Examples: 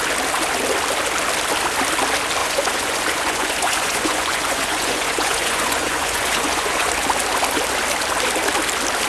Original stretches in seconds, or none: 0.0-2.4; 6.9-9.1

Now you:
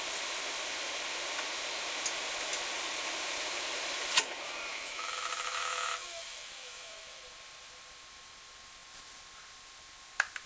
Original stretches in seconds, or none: 0.0-4.7; 7.2-10.5

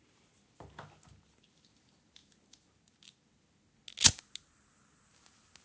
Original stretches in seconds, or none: 0.0-5.6